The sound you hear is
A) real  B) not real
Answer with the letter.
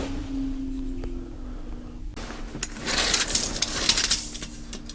A